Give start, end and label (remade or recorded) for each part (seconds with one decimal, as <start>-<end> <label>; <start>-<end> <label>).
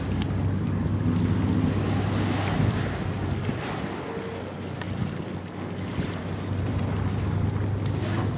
0.0-8.4 recorded